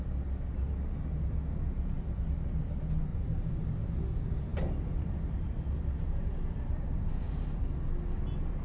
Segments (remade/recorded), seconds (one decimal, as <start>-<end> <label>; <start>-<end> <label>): 0.0-3.1 recorded; 3.1-3.7 remade; 3.7-4.5 recorded; 4.5-8.6 remade